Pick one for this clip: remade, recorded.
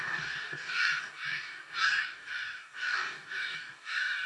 remade